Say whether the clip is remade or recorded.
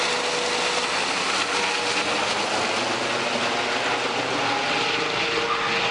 recorded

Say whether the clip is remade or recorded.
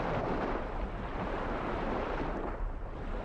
recorded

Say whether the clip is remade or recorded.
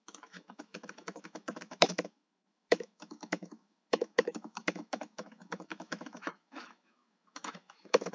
remade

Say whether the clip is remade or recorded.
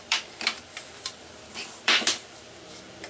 remade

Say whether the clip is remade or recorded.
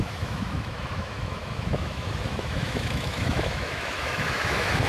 remade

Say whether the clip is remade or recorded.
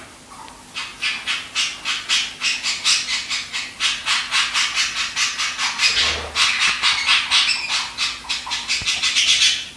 recorded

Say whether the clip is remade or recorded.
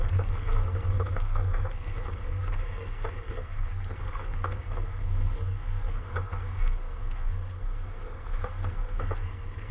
remade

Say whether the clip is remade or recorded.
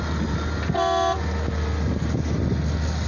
recorded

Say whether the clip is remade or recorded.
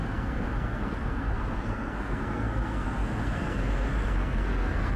remade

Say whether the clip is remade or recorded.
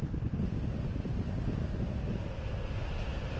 recorded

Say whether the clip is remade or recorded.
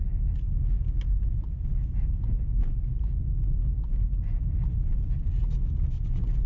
recorded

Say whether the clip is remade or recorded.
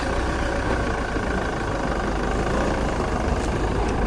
recorded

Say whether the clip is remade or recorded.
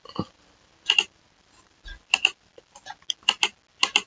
recorded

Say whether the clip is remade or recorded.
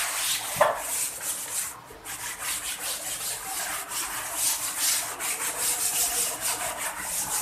recorded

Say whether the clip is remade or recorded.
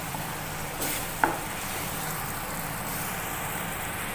remade